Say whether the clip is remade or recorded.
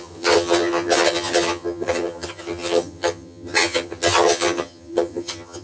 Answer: remade